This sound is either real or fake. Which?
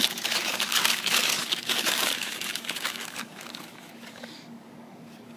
fake